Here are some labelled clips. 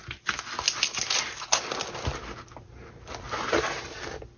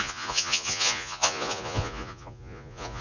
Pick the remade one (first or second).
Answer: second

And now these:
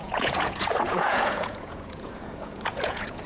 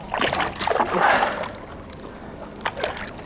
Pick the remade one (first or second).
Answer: first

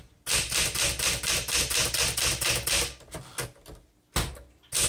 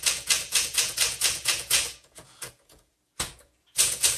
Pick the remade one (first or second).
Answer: second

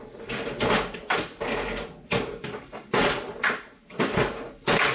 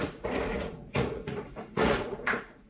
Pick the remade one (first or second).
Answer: second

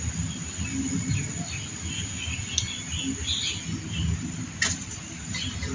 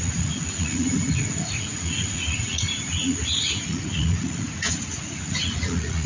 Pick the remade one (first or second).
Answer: second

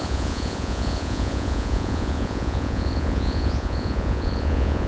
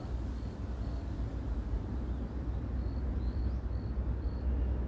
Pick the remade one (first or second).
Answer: first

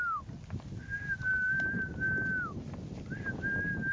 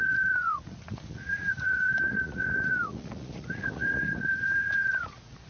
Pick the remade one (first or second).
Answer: second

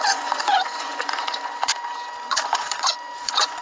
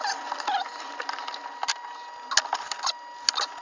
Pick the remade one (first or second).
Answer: first